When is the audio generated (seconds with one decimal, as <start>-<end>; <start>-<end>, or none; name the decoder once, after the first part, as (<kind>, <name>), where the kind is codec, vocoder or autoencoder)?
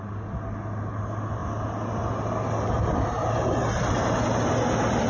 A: none